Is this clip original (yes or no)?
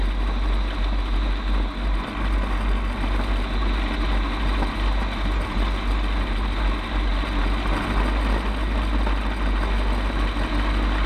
yes